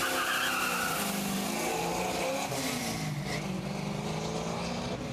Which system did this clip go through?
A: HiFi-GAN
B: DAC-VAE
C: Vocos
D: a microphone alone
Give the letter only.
D